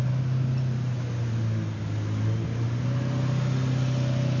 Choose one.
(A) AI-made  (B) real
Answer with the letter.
B